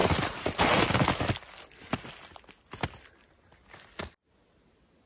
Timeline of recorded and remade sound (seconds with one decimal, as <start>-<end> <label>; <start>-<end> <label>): 0.0-0.6 remade; 0.6-5.1 recorded